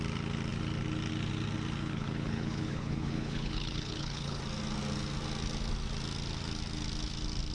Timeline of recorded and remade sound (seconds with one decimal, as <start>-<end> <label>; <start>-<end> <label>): 0.0-1.8 recorded; 1.8-4.4 remade; 4.4-7.5 recorded